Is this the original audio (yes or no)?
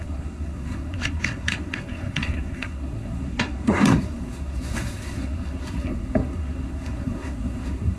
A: no